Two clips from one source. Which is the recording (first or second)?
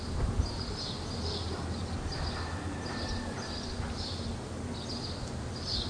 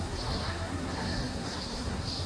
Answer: first